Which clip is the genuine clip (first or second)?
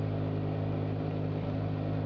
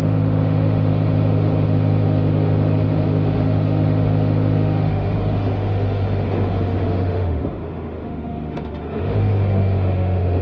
first